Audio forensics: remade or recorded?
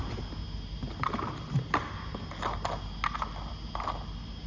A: recorded